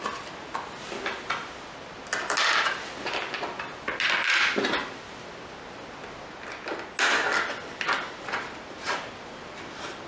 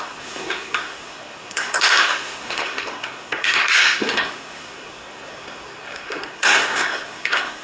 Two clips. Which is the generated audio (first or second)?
second